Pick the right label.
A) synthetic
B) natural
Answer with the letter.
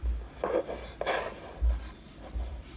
B